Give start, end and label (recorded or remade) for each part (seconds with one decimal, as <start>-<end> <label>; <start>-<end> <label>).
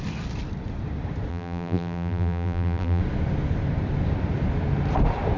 0.0-1.3 recorded; 1.3-3.0 remade; 3.0-5.4 recorded